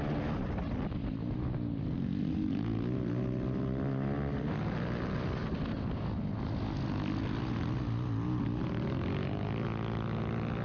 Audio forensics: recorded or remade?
recorded